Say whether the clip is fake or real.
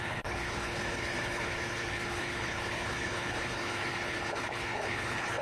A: fake